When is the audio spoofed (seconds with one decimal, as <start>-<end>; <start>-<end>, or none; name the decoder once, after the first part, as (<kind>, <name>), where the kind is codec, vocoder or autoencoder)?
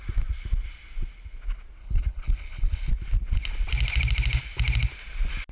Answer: 1.8-2.9 (codec, HILCodec)